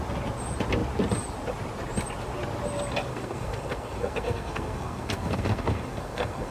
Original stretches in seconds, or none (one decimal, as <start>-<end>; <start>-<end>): 0.0-3.1